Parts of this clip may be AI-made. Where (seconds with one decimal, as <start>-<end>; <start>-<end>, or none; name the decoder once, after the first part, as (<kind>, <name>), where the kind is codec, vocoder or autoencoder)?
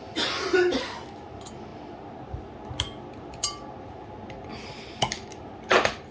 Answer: none